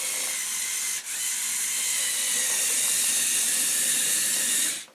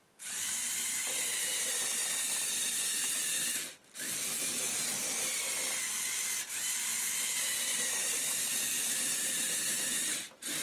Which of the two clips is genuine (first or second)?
first